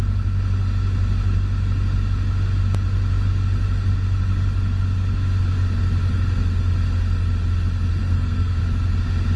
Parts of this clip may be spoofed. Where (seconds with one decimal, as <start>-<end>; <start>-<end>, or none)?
8.0-8.6

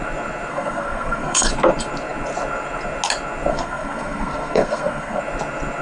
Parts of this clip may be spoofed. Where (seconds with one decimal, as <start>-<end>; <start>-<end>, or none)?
0.5-1.5; 3.5-5.2

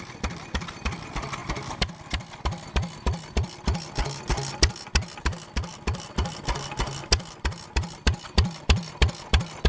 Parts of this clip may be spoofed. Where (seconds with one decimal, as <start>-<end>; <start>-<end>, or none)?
none

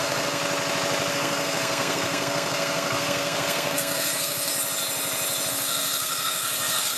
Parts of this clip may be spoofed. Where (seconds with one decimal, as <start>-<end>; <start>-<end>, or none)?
0.0-0.4; 1.1-4.5; 5.5-7.0

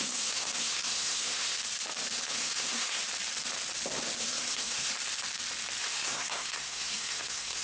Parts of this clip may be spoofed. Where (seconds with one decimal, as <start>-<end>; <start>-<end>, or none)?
0.0-1.6; 2.3-3.0; 4.2-4.9; 5.8-7.6

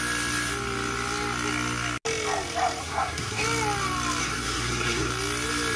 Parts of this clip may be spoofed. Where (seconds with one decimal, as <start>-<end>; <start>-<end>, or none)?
2.8-3.4; 4.2-5.1

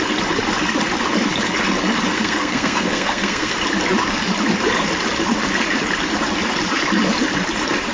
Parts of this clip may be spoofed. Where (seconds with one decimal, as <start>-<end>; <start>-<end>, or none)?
2.1-3.5